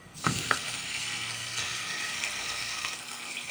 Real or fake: fake